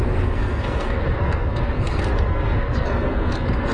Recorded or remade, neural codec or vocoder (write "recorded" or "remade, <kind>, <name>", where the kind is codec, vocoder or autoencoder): remade, codec, SNAC